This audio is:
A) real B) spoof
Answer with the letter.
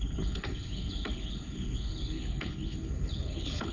B